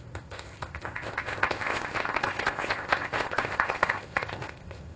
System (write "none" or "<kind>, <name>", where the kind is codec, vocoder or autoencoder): codec, ZipCodec